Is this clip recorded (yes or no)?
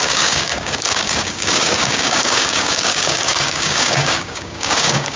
no